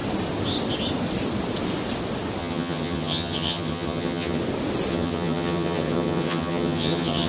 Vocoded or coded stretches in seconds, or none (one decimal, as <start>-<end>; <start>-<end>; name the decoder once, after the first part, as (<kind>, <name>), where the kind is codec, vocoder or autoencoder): 2.4-4.4 (vocoder, HiFi-GAN); 4.9-7.3